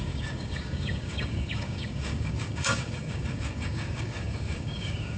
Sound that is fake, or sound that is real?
fake